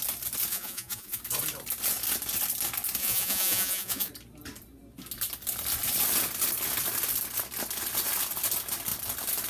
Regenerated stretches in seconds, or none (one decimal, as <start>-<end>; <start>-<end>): 0.5-1.2; 3.0-4.1